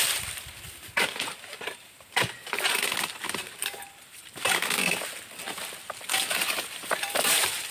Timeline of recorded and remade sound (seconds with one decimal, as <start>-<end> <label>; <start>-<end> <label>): 0.0-2.4 remade; 2.4-3.3 recorded; 3.3-4.5 remade; 4.5-6.3 recorded; 6.3-7.7 remade